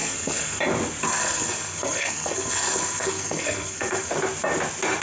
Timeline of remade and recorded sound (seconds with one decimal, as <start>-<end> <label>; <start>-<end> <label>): 0.0-0.6 remade; 0.6-1.2 recorded; 1.2-4.1 remade; 4.1-5.0 recorded